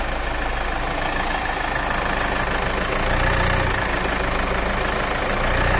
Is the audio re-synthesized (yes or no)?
no